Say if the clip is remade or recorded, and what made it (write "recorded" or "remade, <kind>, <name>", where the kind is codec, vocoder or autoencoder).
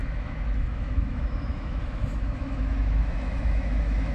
remade, autoencoder, DAC-VAE